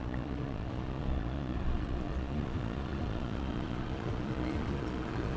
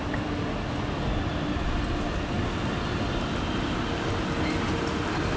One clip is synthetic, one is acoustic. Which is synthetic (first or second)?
first